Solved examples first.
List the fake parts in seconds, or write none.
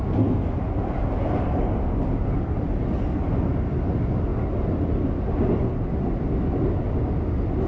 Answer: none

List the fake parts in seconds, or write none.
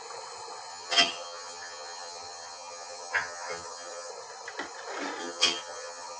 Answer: 0.7-4.1 (vocoder, HiFi-GAN); 5.2-6.2